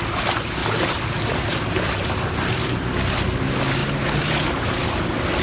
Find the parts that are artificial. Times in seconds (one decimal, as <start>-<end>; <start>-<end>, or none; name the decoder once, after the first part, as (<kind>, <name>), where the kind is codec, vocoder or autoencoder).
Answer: 0.6-1.9 (vocoder, BigVGAN v2); 3.8-4.9